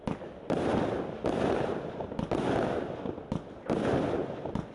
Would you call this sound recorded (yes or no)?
yes